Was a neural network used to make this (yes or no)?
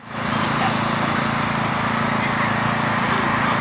no